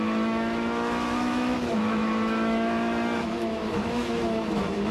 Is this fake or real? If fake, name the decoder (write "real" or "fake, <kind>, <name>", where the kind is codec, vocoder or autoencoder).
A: fake, autoencoder, DAC-VAE